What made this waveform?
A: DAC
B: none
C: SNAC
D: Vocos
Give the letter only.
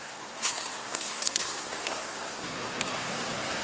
C